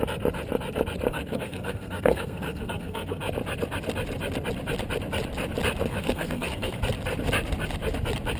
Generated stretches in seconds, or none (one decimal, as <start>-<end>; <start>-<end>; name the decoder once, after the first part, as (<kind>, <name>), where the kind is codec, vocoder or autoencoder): 1.1-3.2 (codec, SNAC); 5.9-6.8